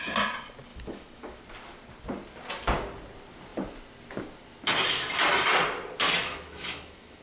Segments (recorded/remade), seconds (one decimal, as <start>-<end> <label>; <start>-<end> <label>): 0.0-0.7 recorded; 0.7-1.4 remade; 1.4-6.2 recorded; 6.2-7.2 remade